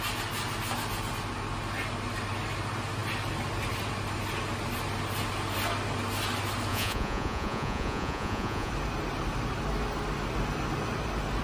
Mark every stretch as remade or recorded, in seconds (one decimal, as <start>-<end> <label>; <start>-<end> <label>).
0.0-6.7 recorded; 6.7-8.7 remade; 8.7-11.4 recorded